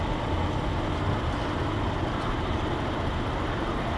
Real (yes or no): yes